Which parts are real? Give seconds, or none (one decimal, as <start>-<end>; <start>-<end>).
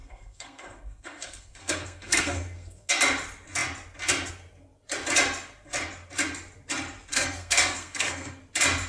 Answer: 2.9-7.1; 8.4-8.9